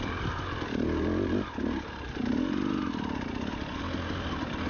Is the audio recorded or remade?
recorded